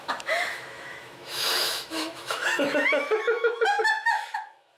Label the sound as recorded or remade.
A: remade